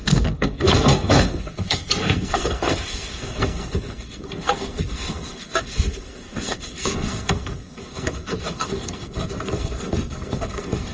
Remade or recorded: remade